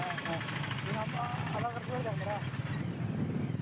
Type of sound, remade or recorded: recorded